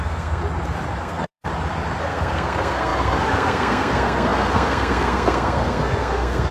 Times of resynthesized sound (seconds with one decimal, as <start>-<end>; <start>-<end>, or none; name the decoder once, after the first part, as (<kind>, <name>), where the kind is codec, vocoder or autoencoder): 0.0-0.4 (codec, SNAC); 1.0-1.5; 2.0-6.5